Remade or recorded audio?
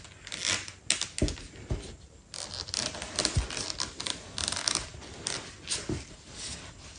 recorded